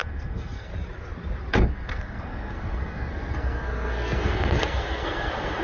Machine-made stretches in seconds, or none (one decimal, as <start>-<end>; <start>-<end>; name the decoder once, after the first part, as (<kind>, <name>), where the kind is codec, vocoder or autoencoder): 0.0-0.7 (codec, SNAC); 1.5-5.6